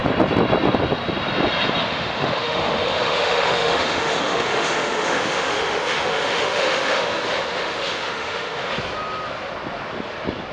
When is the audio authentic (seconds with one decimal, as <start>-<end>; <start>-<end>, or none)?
0.0-1.8; 8.7-10.5